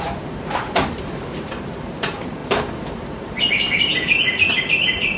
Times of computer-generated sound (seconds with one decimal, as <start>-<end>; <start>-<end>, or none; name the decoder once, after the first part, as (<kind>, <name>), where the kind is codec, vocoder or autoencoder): 0.0-5.2 (vocoder, BigVGAN v2)